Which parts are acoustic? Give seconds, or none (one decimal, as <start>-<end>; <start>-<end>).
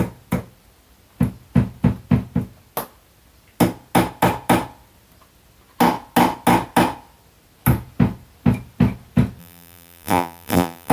0.0-9.4